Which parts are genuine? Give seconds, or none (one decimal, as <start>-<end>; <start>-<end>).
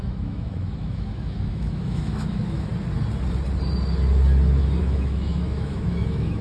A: 2.7-4.8